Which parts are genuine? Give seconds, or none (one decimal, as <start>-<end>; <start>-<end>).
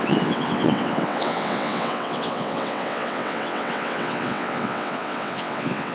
none